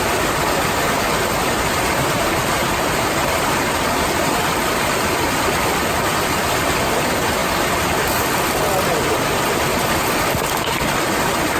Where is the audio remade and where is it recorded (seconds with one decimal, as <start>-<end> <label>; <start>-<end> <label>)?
0.0-2.6 recorded; 2.6-3.9 remade; 3.9-11.6 recorded